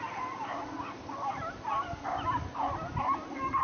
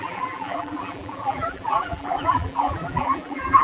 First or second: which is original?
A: first